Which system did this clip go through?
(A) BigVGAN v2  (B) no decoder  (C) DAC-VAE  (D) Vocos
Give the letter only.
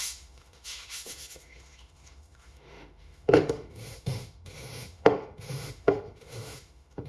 C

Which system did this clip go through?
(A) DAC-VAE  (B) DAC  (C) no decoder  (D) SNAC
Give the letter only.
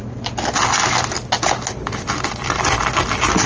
C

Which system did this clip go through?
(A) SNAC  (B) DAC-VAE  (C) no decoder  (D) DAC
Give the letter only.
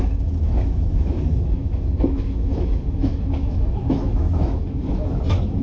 B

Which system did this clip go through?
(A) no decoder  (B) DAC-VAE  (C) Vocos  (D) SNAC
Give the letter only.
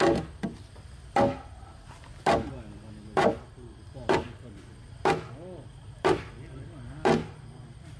A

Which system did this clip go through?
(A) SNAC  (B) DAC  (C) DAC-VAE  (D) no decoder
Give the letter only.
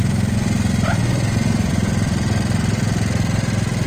D